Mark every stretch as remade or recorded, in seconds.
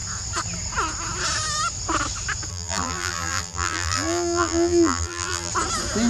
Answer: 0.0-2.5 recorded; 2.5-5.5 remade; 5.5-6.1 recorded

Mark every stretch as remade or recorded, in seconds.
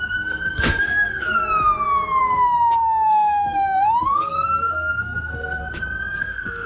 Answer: 0.0-1.4 remade; 1.4-2.2 recorded; 2.2-5.6 remade; 5.6-6.2 recorded; 6.2-6.7 remade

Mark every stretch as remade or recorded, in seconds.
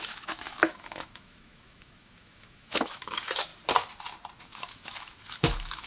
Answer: 0.0-3.5 remade; 3.5-4.4 recorded; 4.4-5.9 remade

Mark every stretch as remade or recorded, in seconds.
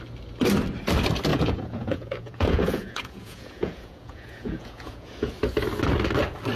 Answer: 0.0-1.3 recorded; 1.3-5.3 remade; 5.3-6.6 recorded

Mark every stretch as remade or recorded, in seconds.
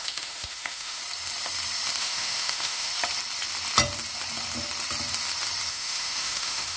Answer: 0.0-1.0 remade; 1.0-2.0 recorded; 2.0-2.9 remade; 2.9-5.7 recorded; 5.7-6.8 remade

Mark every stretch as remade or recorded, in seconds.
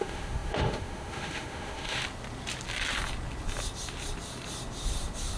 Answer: 0.0-2.0 remade; 2.0-5.4 recorded